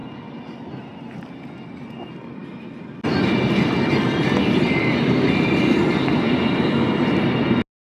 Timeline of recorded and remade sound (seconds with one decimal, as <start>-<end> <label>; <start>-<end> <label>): 0.0-7.9 recorded